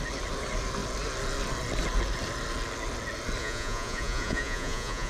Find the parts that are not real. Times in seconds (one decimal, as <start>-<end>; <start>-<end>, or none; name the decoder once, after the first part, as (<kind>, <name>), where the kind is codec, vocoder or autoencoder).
3.4-5.1 (vocoder, Vocos)